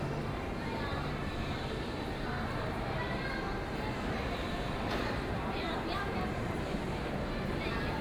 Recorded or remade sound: remade